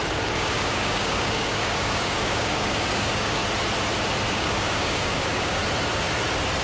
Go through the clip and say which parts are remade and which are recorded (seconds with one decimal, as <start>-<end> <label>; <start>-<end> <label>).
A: 0.0-3.4 remade; 3.4-4.3 recorded; 4.3-5.6 remade; 5.6-6.6 recorded